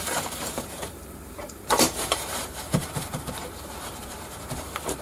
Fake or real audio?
fake